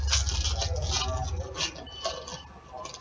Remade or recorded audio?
recorded